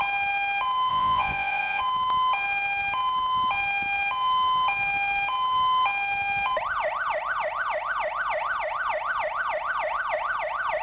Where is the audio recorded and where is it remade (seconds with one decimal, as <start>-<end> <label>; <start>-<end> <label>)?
0.0-0.9 recorded; 0.9-1.8 remade; 1.8-10.8 recorded